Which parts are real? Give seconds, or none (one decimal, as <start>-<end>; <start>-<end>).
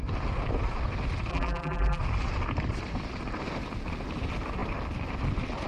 0.0-1.3; 2.0-5.7